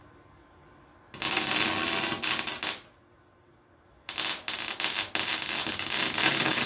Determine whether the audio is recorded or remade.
recorded